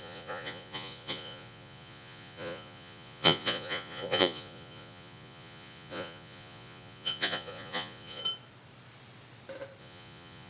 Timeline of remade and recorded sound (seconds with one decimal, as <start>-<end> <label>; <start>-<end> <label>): 0.0-8.2 remade; 8.2-9.8 recorded; 9.8-10.5 remade